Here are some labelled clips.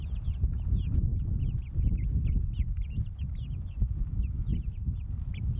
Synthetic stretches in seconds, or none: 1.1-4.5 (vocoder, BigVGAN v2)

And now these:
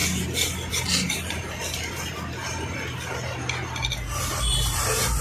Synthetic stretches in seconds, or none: none

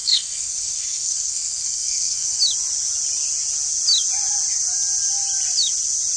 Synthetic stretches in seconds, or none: 0.0-2.4 (codec, SNAC)